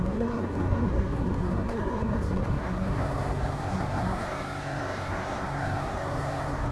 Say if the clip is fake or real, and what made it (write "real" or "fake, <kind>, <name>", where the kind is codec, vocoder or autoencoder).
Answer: fake, codec, SNAC